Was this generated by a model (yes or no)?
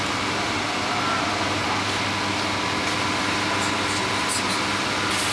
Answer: no